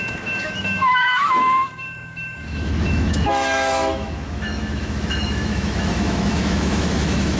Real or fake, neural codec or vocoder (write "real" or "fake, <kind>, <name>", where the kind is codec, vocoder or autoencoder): fake, autoencoder, DAC-VAE